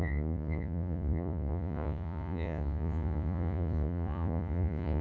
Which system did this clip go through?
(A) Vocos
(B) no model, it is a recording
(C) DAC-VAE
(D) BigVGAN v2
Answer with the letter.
A